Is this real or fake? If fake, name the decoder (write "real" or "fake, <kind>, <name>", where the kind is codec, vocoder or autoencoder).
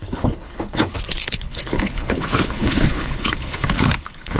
fake, codec, HILCodec